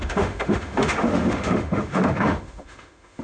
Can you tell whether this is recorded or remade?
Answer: remade